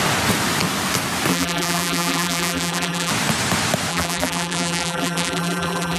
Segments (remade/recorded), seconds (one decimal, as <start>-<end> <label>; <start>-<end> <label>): 0.0-1.3 recorded; 1.3-3.1 remade; 3.1-3.9 recorded; 3.9-6.0 remade